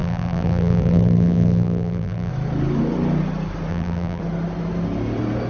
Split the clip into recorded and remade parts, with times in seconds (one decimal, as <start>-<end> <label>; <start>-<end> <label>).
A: 0.0-2.3 remade; 2.3-3.7 recorded; 3.7-4.2 remade; 4.2-5.5 recorded